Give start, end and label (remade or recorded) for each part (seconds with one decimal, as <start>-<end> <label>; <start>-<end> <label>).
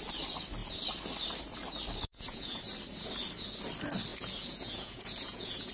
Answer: 0.0-2.0 recorded; 2.0-2.7 remade; 2.7-4.1 recorded; 4.1-5.7 remade